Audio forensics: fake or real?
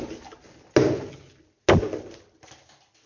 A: real